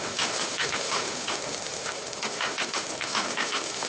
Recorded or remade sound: remade